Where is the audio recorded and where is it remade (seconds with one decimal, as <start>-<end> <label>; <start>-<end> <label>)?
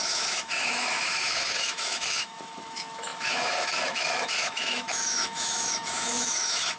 0.0-6.8 remade